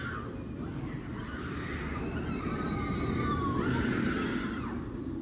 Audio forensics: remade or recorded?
recorded